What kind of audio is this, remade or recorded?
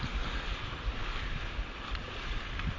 recorded